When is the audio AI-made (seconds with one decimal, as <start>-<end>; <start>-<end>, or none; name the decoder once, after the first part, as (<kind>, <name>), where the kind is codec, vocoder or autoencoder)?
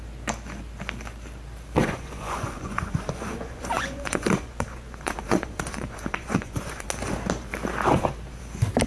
1.8-6.9 (vocoder, Vocos)